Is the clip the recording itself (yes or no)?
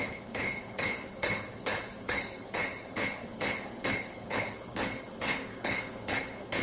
no